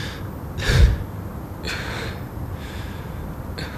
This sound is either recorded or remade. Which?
recorded